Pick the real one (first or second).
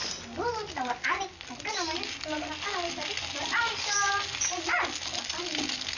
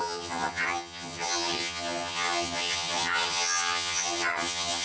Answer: first